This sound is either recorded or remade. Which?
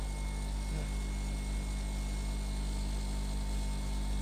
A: recorded